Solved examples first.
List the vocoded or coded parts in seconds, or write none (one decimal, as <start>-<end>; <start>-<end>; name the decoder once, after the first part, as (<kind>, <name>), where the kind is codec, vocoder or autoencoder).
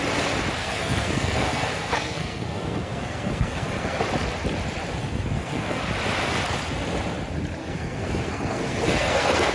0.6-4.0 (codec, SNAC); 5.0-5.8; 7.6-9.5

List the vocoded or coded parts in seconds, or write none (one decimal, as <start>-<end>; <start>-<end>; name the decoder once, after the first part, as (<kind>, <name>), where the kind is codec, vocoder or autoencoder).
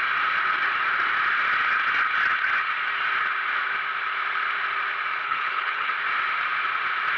5.2-5.9 (codec, HILCodec)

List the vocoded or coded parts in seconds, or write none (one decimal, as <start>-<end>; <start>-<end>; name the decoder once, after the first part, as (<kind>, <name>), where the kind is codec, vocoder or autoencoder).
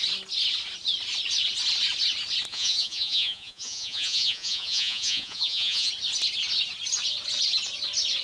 2.5-5.9 (vocoder, Vocos)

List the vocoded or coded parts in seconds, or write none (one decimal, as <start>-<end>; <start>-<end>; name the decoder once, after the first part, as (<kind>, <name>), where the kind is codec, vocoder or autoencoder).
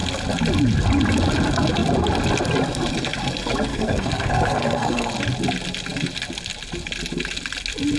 3.7-5.1 (codec, SNAC)